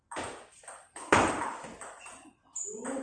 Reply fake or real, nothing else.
real